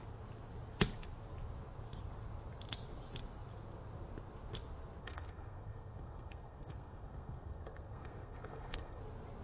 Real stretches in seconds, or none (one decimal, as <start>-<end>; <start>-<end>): 0.0-5.0; 9.0-9.4